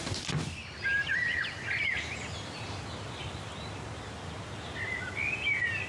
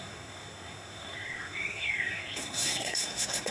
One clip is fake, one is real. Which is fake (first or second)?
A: second